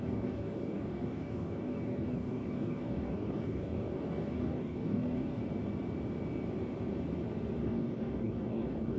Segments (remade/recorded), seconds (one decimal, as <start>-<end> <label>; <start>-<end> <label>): 0.0-5.4 remade; 5.4-7.6 recorded; 7.6-9.0 remade